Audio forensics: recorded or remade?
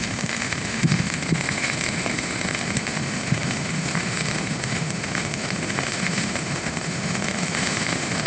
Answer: remade